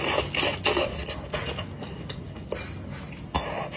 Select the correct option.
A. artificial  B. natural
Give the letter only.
B